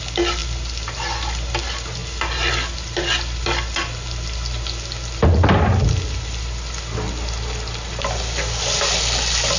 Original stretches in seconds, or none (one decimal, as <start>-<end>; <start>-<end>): 0.0-9.6